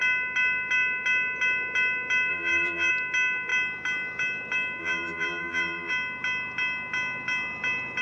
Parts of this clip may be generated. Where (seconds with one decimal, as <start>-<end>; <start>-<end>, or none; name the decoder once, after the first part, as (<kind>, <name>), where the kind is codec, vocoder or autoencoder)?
2.3-2.9 (vocoder, BigVGAN v2); 4.8-5.9